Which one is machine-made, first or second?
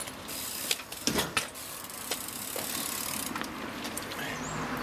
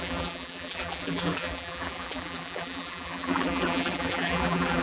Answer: second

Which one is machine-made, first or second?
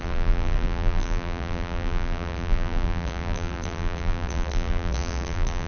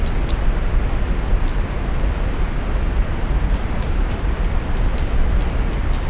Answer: first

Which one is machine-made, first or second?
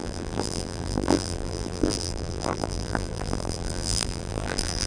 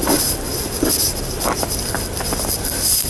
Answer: first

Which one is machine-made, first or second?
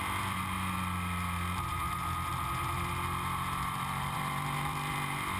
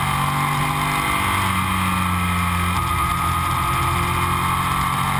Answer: first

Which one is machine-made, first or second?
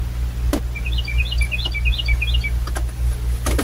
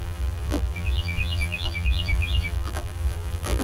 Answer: second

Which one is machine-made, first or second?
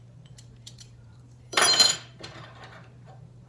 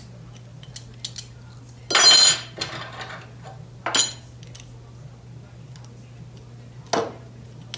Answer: first